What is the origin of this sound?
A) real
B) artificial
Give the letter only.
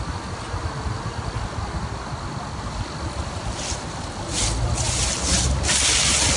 A